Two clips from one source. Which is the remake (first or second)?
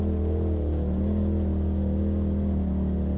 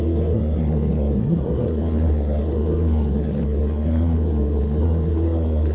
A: second